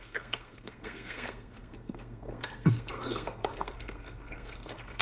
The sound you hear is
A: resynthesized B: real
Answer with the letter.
A